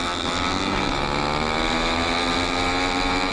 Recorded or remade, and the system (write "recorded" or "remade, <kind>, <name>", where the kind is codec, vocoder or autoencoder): recorded